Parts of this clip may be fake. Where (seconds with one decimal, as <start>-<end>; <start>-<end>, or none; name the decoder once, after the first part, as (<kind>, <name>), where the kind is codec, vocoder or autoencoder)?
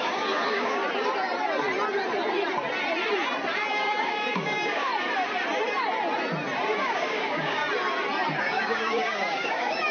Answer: 0.0-0.8 (codec, DAC); 3.7-4.9; 6.8-7.6; 8.4-9.9